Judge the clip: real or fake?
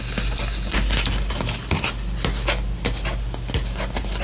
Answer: real